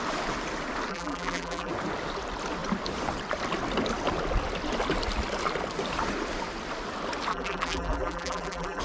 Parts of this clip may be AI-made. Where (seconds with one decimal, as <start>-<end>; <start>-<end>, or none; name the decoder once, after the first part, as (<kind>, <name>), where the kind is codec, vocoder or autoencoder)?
0.9-1.7 (vocoder, BigVGAN v2); 7.3-8.8